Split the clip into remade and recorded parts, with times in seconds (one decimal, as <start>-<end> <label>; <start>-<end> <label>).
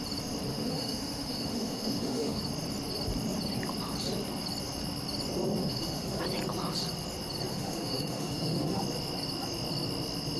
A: 0.0-0.5 recorded; 0.5-2.4 remade; 2.4-5.6 recorded; 5.6-6.2 remade; 6.2-7.5 recorded; 7.5-8.8 remade; 8.8-10.4 recorded